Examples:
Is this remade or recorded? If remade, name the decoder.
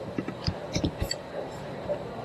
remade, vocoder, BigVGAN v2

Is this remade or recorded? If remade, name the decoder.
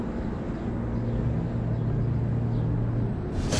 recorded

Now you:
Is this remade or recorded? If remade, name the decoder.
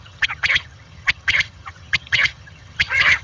remade, vocoder, HiFi-GAN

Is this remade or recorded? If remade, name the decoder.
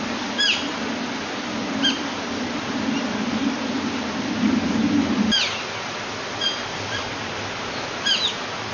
recorded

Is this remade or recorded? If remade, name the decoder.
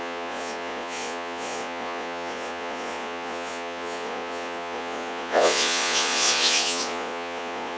remade, vocoder, Vocos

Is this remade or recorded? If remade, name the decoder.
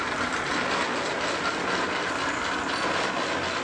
recorded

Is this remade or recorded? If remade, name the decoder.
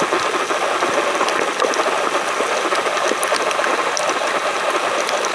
recorded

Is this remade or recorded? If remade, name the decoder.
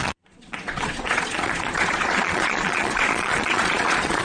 remade, vocoder, Vocos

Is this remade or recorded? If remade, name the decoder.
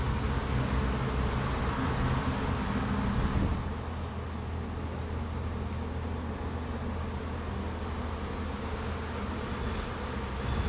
recorded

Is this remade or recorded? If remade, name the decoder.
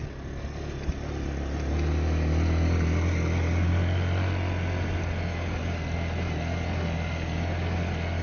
recorded